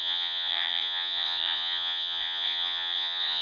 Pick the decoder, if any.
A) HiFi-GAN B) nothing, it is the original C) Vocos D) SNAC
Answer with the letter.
C